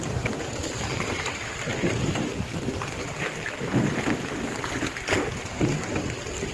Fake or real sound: real